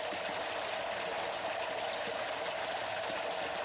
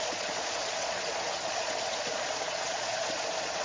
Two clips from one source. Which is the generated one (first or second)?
second